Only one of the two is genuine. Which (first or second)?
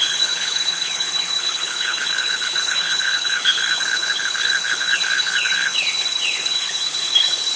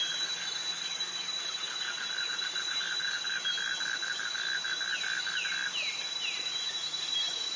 second